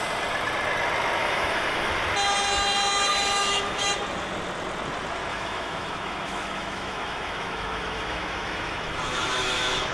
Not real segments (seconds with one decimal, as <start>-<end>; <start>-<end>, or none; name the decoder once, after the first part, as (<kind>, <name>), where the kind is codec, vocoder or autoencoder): 1.2-1.9 (autoencoder, DAC-VAE); 3.1-3.9; 5.3-9.9